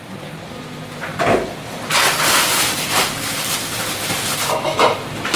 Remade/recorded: remade